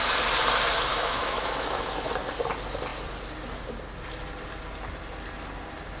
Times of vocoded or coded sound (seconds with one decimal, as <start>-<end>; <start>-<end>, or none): 0.9-2.1

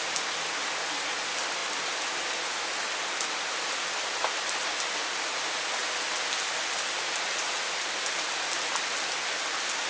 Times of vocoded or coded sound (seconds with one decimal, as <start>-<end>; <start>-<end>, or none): none